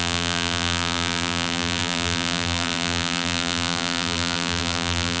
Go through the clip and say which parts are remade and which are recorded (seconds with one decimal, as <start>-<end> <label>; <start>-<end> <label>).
0.0-5.2 remade